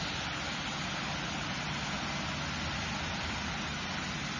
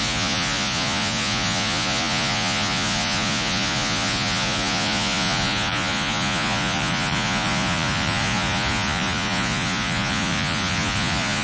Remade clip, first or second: second